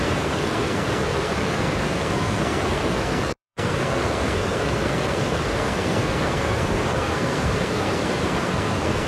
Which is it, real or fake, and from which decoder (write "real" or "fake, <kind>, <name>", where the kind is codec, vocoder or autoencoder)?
fake, codec, SNAC